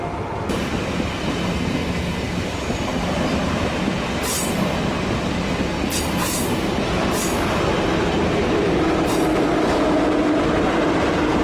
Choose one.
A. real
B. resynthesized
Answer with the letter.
A